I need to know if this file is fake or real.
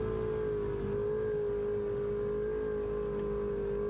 real